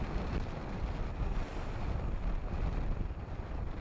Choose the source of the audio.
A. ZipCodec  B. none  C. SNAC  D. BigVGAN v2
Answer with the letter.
B